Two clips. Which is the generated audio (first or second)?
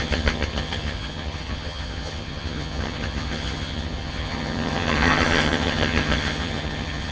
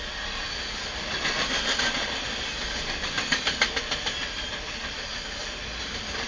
first